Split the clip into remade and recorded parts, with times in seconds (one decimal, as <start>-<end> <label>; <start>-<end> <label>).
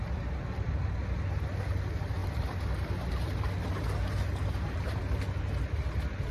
0.0-6.3 recorded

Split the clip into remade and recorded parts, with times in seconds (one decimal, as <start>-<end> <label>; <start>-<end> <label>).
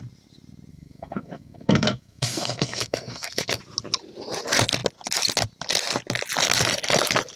0.0-0.7 recorded; 0.7-3.6 remade; 3.6-7.4 recorded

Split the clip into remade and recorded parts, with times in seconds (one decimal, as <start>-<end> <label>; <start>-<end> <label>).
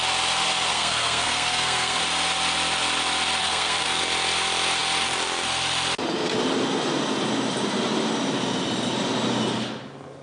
0.0-0.7 recorded; 0.7-2.0 remade; 2.0-3.4 recorded; 3.4-4.0 remade; 4.0-10.2 recorded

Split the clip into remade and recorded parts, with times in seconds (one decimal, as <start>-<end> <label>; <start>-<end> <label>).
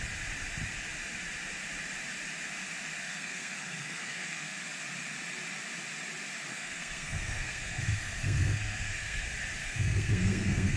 0.0-3.0 recorded; 3.0-4.6 remade; 4.6-6.5 recorded; 6.5-9.2 remade; 9.2-9.6 recorded; 9.6-10.8 remade